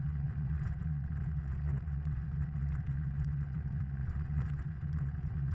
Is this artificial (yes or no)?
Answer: yes